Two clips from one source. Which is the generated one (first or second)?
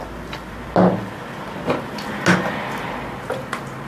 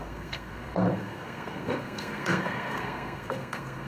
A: second